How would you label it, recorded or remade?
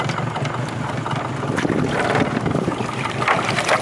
recorded